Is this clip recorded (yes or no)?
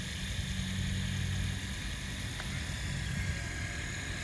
yes